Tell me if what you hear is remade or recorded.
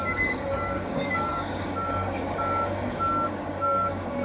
remade